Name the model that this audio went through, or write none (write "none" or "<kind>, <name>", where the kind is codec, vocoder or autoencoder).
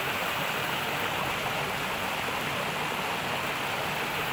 none